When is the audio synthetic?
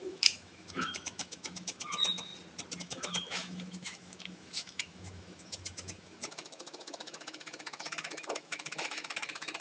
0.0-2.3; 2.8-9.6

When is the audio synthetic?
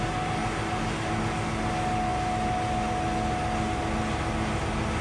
none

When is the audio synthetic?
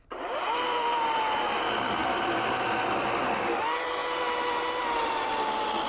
0.0-4.0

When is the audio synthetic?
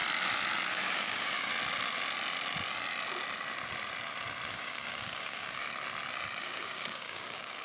0.7-1.5; 4.5-5.6; 6.4-7.6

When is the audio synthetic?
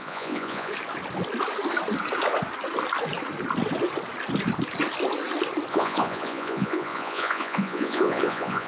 0.0-0.7; 5.7-8.7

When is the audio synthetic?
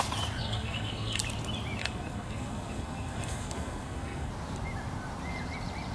0.4-1.2; 1.8-4.3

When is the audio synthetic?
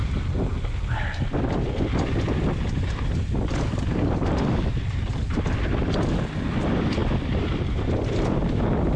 none